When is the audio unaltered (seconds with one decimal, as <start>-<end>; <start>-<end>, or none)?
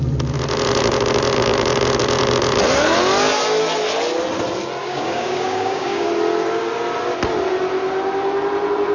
0.0-4.8; 6.1-8.9